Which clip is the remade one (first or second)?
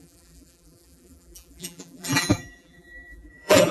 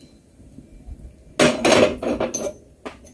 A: first